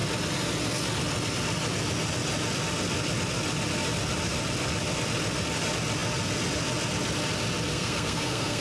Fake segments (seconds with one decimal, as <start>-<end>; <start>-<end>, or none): 7.7-8.6